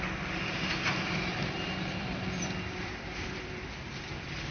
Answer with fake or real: fake